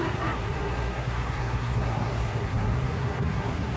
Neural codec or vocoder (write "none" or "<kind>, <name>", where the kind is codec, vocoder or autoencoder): codec, SNAC